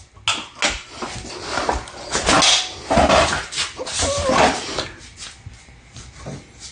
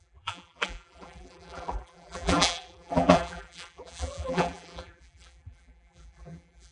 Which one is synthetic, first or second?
second